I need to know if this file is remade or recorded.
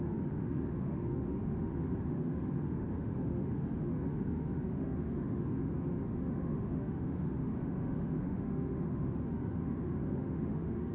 remade